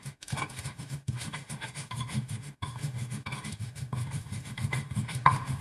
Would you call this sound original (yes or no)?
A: no